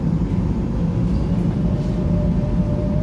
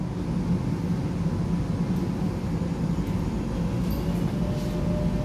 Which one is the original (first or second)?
second